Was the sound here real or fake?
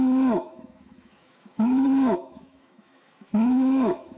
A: fake